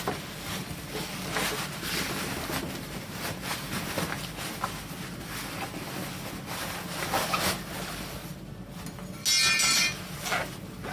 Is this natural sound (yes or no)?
yes